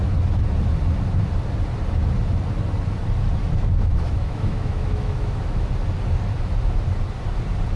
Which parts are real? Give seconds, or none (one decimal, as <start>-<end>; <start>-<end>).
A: 0.0-3.4; 5.7-7.8